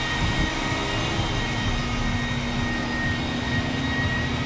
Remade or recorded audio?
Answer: recorded